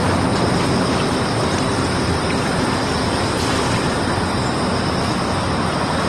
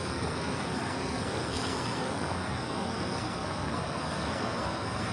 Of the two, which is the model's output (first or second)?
second